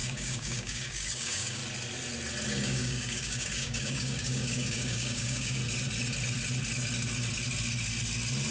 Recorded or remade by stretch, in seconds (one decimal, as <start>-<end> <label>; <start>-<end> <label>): 0.0-1.6 remade; 1.6-2.5 recorded; 2.5-5.6 remade; 5.6-8.5 recorded